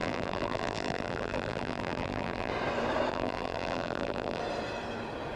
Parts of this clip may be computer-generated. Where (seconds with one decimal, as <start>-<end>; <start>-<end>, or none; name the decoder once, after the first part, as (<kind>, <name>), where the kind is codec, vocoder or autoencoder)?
0.0-2.5 (vocoder, BigVGAN v2); 3.1-4.4